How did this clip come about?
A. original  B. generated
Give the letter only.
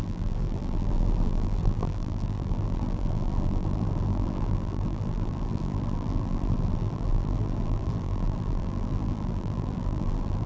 B